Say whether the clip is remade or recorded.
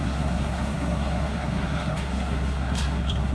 remade